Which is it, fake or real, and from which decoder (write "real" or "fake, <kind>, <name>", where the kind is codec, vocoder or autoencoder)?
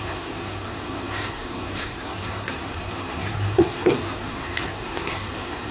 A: fake, codec, SNAC